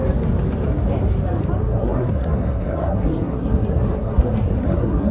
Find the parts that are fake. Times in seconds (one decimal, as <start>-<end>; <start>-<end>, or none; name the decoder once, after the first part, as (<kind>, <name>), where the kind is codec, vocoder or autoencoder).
1.6-5.1 (codec, SNAC)